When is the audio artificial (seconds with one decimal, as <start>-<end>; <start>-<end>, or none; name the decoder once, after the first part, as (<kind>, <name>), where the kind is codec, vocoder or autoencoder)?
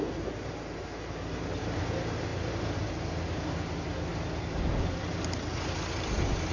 2.3-2.9 (vocoder, BigVGAN v2)